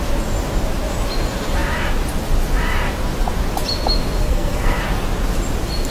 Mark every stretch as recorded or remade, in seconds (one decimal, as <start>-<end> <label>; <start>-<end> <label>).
0.0-4.2 recorded; 4.2-4.8 remade; 4.8-5.9 recorded